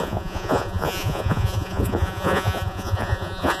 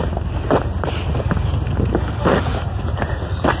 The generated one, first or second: first